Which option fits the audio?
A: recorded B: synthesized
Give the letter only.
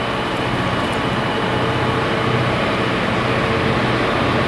A